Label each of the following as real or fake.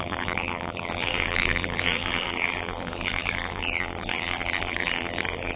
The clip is fake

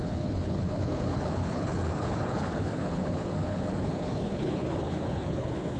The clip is fake